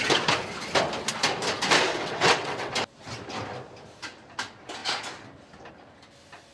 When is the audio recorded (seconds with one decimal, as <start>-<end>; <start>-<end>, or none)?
0.0-1.9; 2.7-6.5